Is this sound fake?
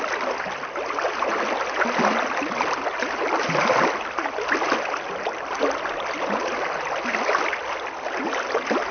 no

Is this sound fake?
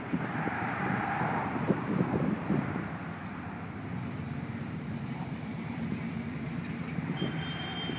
yes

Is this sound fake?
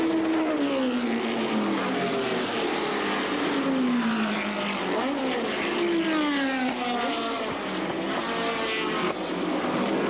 no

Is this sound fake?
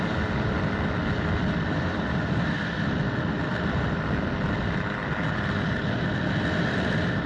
no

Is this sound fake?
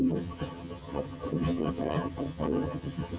yes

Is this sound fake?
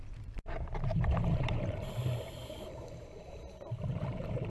yes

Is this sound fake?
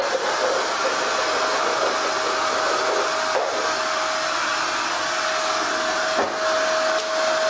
no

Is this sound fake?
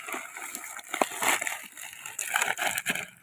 no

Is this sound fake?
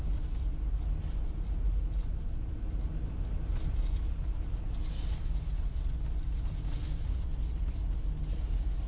no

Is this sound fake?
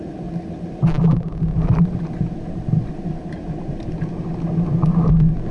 no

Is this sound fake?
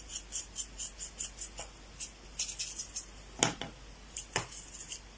no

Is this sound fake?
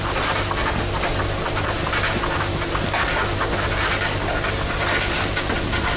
no